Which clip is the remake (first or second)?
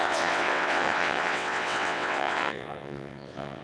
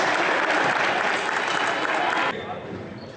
first